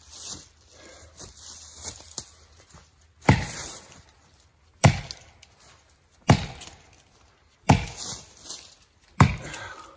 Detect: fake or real real